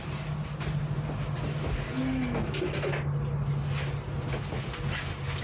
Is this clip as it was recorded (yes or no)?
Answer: yes